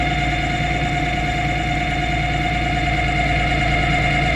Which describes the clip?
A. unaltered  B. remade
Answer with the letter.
A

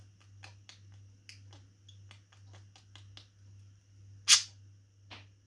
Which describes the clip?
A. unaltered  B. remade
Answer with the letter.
A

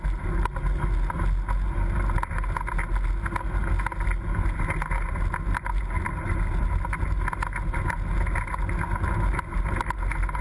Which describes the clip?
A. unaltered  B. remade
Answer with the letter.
A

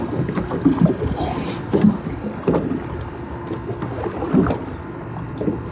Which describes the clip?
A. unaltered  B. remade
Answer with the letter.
A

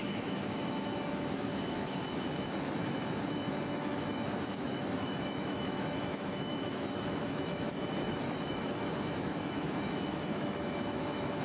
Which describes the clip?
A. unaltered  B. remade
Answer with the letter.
B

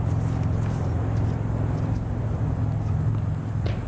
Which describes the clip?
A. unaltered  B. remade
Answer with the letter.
A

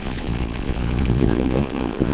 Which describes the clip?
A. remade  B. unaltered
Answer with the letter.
A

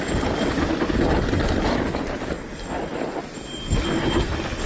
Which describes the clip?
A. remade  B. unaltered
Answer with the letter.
B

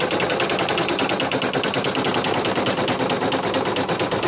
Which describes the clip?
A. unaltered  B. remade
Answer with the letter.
A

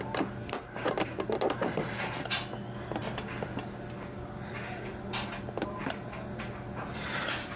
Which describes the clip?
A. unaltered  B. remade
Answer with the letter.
A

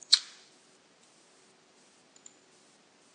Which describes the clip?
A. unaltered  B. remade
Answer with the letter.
A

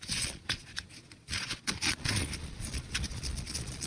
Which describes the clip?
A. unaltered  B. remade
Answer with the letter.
B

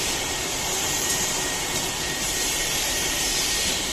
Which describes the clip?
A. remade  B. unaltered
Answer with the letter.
A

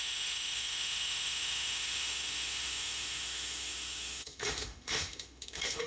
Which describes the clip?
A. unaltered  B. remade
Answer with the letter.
B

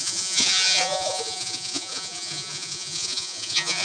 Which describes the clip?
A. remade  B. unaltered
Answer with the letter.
A